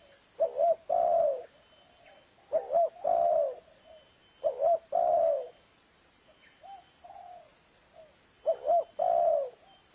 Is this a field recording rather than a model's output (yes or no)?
yes